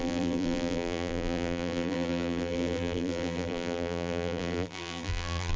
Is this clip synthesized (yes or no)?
yes